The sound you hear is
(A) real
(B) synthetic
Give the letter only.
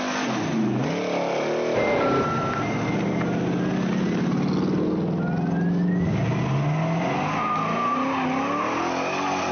A